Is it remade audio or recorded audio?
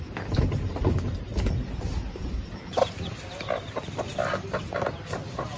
recorded